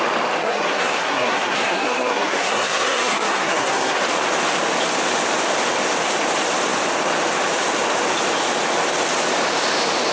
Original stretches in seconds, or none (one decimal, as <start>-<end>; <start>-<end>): 0.0-0.4; 4.0-10.1